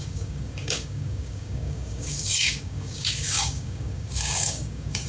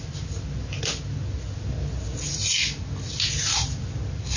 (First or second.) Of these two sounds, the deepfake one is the first